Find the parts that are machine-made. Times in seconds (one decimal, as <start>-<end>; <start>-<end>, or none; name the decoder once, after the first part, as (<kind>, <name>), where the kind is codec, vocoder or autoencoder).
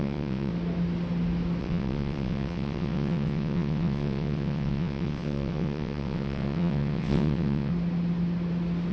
0.0-0.5 (vocoder, WaveNeXt); 1.6-7.7